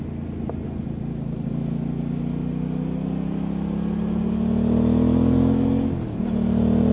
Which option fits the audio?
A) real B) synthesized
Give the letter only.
A